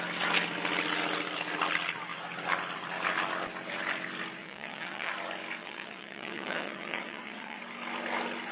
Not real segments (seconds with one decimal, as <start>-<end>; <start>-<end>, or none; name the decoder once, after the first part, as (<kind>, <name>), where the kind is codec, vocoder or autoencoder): 4.4-5.1 (vocoder, WaveNeXt); 5.6-7.6